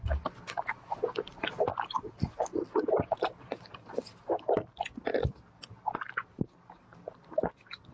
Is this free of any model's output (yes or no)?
yes